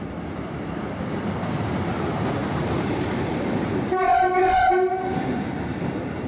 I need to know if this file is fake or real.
fake